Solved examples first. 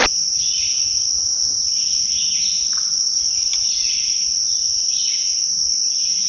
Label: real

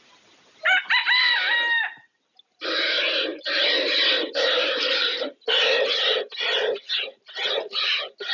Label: real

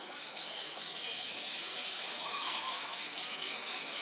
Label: fake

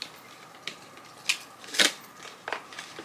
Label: real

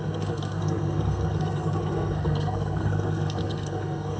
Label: fake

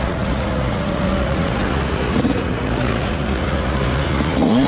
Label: fake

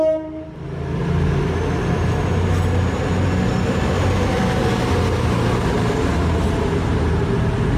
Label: real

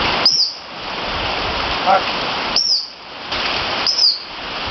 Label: real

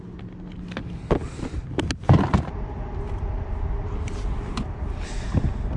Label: real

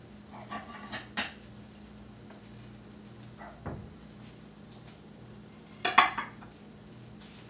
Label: real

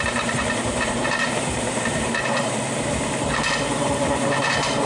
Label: fake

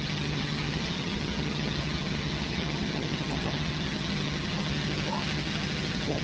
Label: fake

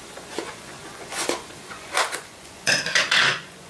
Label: fake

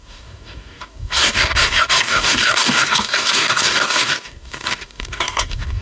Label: fake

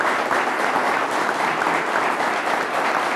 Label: real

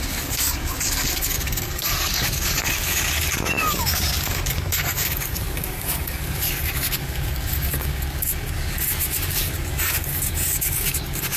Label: fake